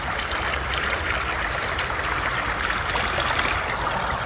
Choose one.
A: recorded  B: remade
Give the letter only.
A